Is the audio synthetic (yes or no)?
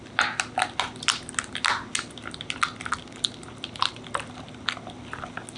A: no